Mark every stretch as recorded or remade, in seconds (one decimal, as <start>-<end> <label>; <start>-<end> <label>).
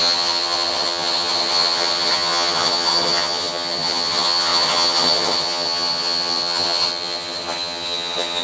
0.0-8.4 remade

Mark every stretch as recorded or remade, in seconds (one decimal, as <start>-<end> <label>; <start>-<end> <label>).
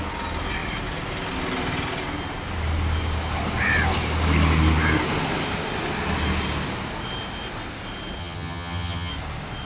0.0-8.2 recorded; 8.2-9.1 remade; 9.1-9.7 recorded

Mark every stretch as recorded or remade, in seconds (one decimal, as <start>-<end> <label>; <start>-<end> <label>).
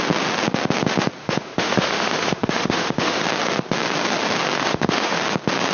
0.0-1.2 recorded; 1.2-3.2 remade; 3.2-4.6 recorded; 4.6-5.2 remade; 5.2-5.7 recorded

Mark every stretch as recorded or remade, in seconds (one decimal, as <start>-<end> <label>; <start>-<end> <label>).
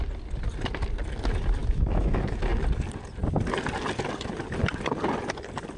0.0-1.6 recorded; 1.6-2.4 remade; 2.4-5.8 recorded